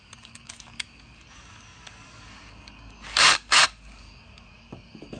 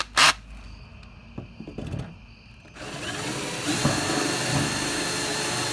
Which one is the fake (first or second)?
first